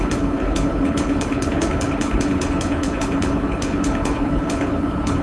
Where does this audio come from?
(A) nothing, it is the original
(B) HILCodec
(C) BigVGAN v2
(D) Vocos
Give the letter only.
B